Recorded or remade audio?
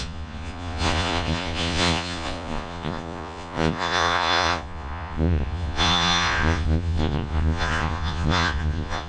remade